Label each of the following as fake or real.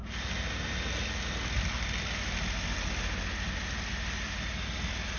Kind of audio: real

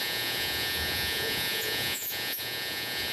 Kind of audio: fake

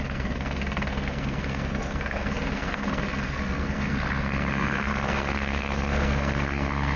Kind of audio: fake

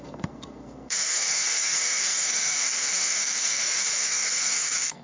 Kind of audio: fake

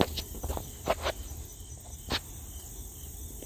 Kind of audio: real